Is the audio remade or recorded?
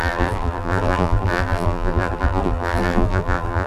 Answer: remade